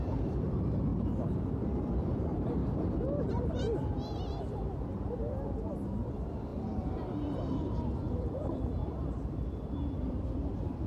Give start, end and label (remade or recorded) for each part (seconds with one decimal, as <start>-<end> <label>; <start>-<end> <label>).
0.0-0.9 remade; 0.9-1.7 recorded; 1.7-2.6 remade; 2.6-3.2 recorded; 3.2-10.9 remade